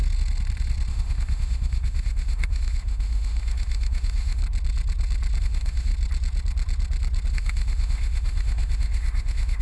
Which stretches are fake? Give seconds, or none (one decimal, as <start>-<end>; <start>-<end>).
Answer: 0.9-4.4; 5.4-5.9; 7.3-9.6